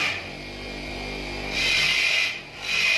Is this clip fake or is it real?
real